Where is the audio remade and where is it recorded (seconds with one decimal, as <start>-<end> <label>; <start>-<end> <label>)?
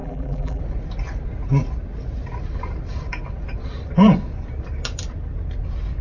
0.0-0.6 remade; 0.6-6.0 recorded